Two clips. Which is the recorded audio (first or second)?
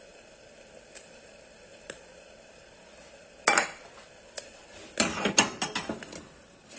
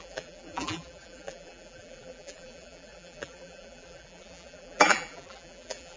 first